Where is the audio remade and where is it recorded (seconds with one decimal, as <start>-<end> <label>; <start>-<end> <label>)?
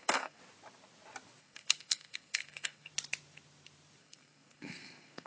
0.0-0.4 remade; 0.4-1.4 recorded; 1.4-2.9 remade; 2.9-4.0 recorded; 4.0-5.3 remade